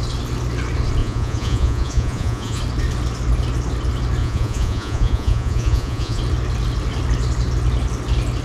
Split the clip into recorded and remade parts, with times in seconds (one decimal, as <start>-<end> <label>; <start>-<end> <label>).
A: 0.0-1.0 recorded; 1.0-2.6 remade; 2.6-4.2 recorded; 4.2-6.2 remade; 6.2-8.4 recorded